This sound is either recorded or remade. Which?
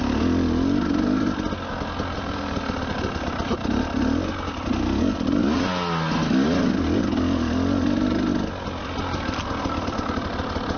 recorded